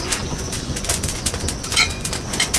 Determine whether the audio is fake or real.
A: fake